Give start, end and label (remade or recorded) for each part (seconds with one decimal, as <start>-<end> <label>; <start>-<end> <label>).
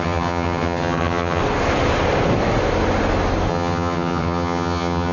0.0-1.4 remade; 1.4-3.5 recorded; 3.5-5.1 remade